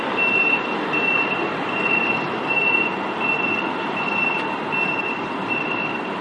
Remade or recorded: recorded